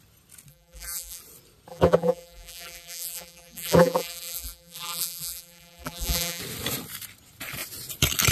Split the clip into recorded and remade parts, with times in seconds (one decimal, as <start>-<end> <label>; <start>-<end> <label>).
0.0-0.5 recorded; 0.5-1.2 remade; 1.2-1.7 recorded; 1.7-6.4 remade; 6.4-8.3 recorded